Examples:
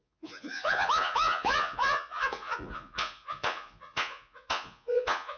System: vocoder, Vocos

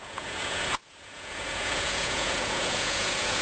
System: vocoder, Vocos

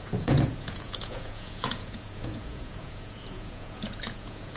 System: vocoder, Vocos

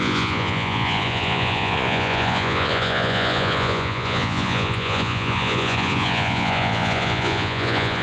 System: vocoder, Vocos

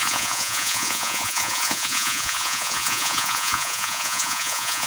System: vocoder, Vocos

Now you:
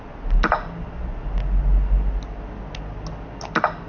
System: none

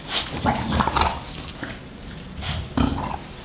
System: none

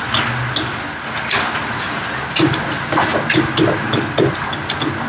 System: none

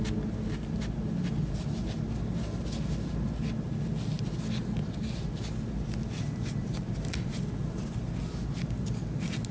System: none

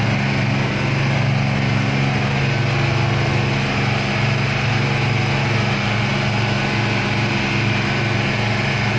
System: none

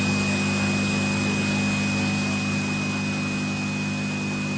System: none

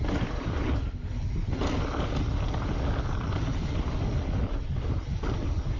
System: none